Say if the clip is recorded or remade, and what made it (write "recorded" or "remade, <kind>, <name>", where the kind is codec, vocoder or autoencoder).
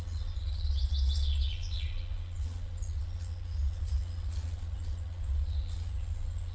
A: remade, vocoder, Vocos